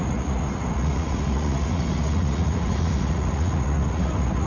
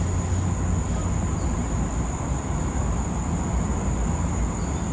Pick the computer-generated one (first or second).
first